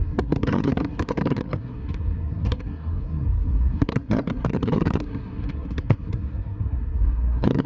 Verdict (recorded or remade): remade